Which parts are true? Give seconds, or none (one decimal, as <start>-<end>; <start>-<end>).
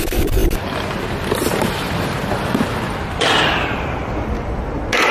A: 0.0-5.1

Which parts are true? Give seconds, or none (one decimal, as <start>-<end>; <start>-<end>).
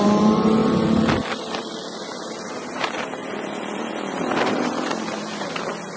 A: 0.6-2.5; 3.2-3.9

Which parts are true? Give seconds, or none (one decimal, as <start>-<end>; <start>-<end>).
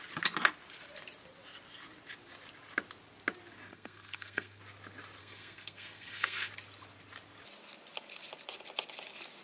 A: 0.0-3.7; 4.6-5.2; 6.5-9.4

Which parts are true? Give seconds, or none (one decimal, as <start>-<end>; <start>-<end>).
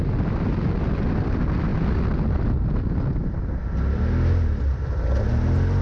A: 0.0-5.8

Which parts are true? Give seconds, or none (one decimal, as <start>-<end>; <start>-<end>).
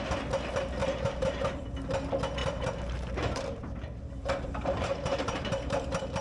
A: 0.0-0.8; 1.9-2.4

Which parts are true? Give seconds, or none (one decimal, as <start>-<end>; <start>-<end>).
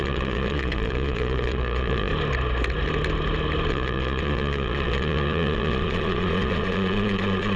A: 2.1-3.7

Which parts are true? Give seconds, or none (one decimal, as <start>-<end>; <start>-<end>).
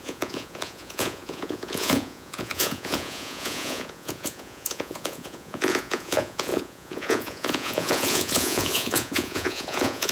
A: none